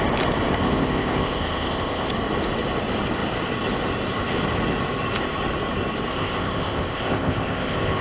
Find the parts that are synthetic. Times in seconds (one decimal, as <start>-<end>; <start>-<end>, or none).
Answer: 0.5-2.1; 6.1-8.0